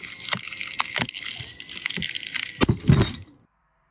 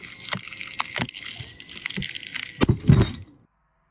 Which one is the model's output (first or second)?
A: first